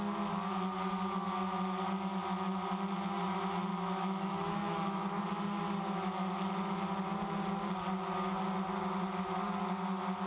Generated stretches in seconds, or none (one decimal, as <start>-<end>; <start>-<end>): 3.7-5.2